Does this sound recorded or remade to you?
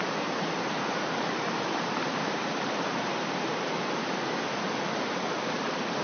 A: remade